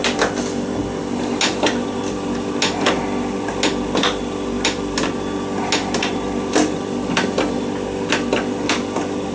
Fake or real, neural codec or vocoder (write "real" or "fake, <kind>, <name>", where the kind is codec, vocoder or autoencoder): real